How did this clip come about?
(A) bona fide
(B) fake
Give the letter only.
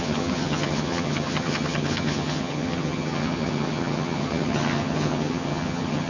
B